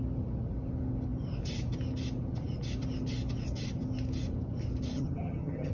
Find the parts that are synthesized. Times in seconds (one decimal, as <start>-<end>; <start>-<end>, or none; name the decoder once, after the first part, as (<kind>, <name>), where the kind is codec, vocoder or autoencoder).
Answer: 4.9-5.7 (vocoder, HiFi-GAN)